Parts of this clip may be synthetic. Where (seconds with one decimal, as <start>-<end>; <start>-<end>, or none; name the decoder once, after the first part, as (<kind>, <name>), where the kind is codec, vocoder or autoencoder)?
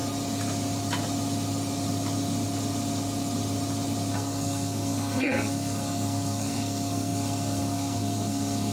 4.1-8.7 (codec, SNAC)